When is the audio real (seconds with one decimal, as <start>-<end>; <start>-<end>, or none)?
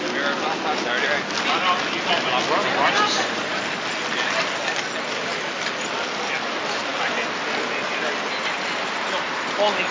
0.0-9.9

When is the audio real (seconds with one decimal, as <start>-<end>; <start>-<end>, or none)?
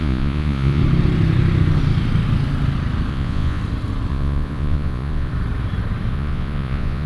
0.8-3.1; 3.6-4.1; 5.3-6.1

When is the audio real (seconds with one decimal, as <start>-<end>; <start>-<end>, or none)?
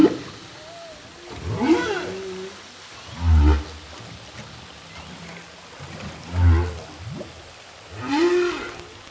0.0-9.1